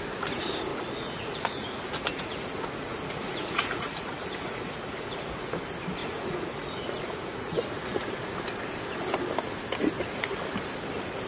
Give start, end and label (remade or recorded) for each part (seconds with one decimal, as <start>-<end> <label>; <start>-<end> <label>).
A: 0.0-0.7 recorded; 0.7-5.6 remade; 5.6-6.0 recorded; 6.0-8.1 remade; 8.1-11.3 recorded